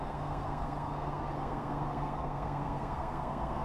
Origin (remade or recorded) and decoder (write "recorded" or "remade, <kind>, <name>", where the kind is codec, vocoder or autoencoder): remade, codec, SNAC